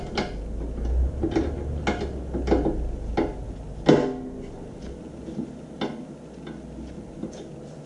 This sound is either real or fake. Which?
real